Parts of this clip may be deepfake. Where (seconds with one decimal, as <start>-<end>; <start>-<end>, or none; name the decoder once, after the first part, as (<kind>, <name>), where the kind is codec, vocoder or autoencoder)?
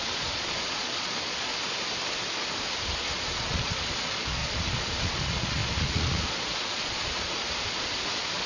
0.0-1.5 (vocoder, Vocos); 2.9-8.5